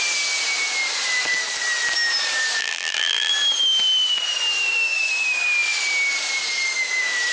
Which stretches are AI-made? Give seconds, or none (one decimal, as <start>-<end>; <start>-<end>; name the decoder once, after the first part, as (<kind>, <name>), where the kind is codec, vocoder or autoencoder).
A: 2.6-3.3 (vocoder, BigVGAN v2)